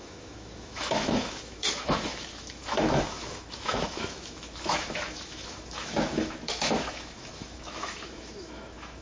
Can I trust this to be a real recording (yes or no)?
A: no